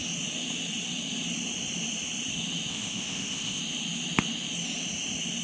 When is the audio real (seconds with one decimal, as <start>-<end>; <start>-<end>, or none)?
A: 0.0-2.7; 3.6-5.4